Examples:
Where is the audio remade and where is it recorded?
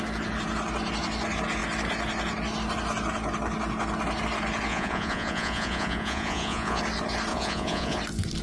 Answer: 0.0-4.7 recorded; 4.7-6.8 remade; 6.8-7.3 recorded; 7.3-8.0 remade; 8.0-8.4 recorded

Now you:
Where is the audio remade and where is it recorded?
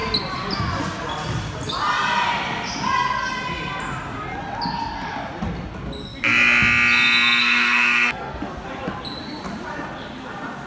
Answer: 0.0-7.4 recorded; 7.4-8.4 remade; 8.4-10.7 recorded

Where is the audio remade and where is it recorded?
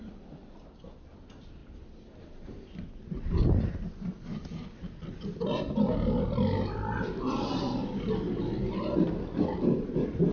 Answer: 0.0-10.3 recorded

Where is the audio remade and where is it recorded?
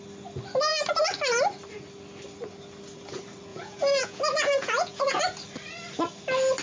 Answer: 0.0-3.5 recorded; 3.5-5.2 remade; 5.2-6.6 recorded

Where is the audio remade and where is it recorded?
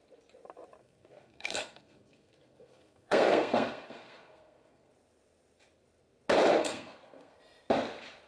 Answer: 0.0-0.8 recorded; 0.8-4.9 remade; 4.9-6.6 recorded; 6.6-7.4 remade; 7.4-8.3 recorded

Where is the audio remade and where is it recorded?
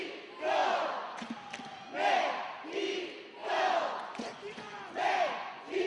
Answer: 0.0-0.6 recorded; 0.6-1.3 remade; 1.3-3.4 recorded; 3.4-5.9 remade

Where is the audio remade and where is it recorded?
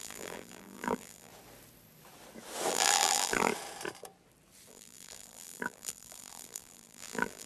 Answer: 0.0-1.3 remade; 1.3-2.7 recorded; 2.7-3.5 remade; 3.5-4.7 recorded; 4.7-7.5 remade